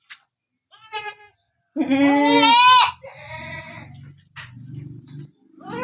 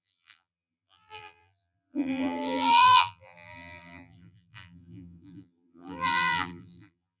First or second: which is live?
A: first